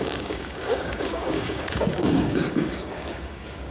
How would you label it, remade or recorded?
remade